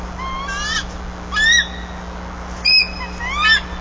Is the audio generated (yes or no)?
no